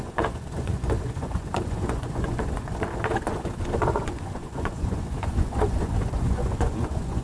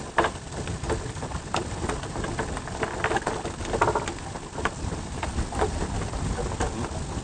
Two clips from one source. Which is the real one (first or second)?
second